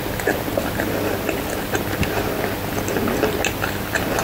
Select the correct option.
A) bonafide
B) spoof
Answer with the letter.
A